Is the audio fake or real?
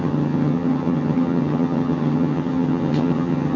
fake